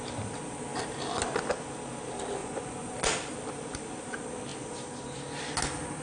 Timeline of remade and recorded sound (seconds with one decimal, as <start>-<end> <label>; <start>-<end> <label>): 0.0-2.4 recorded; 2.4-2.9 remade; 2.9-6.0 recorded